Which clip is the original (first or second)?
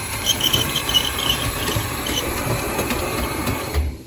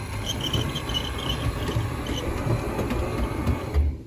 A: second